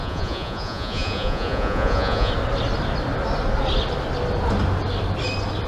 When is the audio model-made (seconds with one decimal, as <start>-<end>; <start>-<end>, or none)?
0.0-2.3